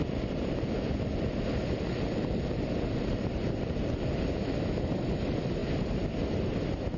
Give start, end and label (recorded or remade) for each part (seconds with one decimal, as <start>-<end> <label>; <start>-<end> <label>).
0.0-5.6 remade; 5.6-7.0 recorded